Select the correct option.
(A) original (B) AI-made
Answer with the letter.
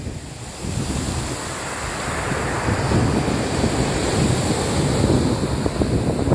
A